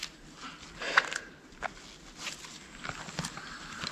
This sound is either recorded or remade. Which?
recorded